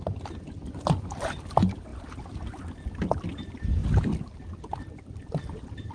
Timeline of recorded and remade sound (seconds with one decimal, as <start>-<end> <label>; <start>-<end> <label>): 0.0-3.8 recorded; 3.8-4.4 remade; 4.4-5.9 recorded